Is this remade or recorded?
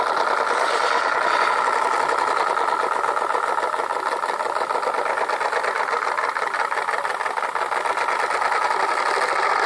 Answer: recorded